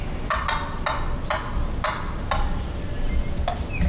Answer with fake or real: real